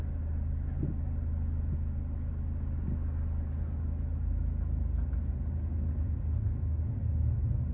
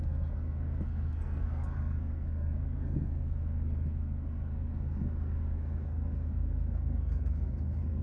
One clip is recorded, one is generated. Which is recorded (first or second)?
first